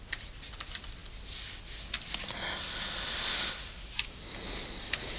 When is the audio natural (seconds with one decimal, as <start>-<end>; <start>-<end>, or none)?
0.0-5.2